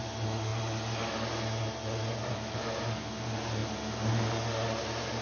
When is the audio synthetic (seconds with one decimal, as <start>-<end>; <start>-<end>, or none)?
none